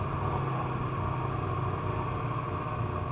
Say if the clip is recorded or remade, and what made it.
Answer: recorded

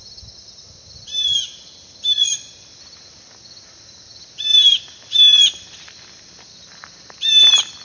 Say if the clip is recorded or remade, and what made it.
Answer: recorded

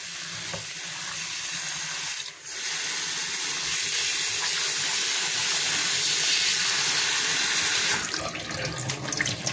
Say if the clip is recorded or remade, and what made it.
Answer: recorded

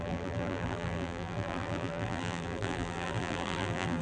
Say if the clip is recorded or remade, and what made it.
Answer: remade, vocoder, BigVGAN v2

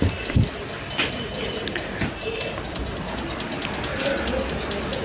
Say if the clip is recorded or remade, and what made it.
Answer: recorded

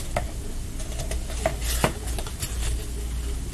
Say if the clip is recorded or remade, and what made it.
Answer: recorded